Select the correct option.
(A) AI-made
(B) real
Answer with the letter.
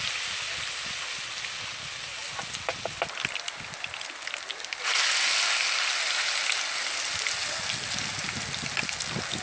B